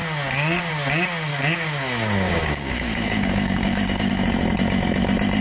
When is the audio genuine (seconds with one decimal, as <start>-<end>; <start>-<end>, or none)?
0.0-1.3; 4.1-5.4

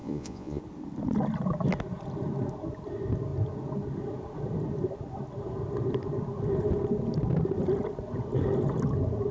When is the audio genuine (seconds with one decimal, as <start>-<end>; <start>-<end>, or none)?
0.6-9.3

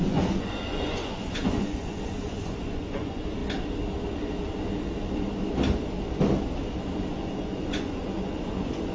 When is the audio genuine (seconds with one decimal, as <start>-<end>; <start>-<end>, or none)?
3.4-7.1